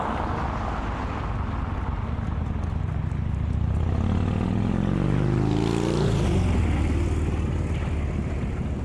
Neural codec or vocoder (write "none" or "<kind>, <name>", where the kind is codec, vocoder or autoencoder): none